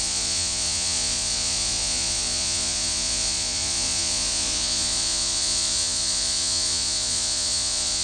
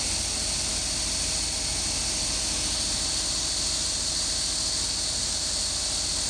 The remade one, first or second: first